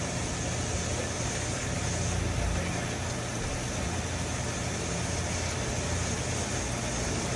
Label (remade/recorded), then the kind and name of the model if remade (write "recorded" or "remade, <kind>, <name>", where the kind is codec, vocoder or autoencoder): recorded